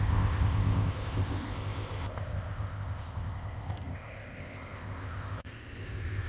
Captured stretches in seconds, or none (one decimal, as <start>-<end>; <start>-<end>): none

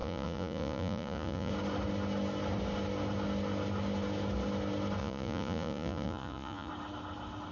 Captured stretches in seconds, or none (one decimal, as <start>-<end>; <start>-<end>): 1.5-5.0; 6.7-7.5

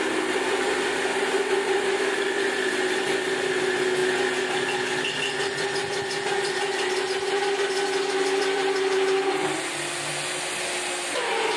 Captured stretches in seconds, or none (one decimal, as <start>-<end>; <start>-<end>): 0.0-11.6

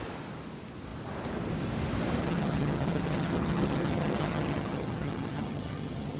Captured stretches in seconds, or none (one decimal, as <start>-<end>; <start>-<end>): 0.0-2.2

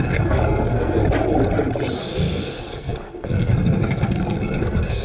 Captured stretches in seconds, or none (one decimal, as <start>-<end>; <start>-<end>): 1.0-2.0